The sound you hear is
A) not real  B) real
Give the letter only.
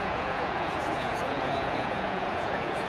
A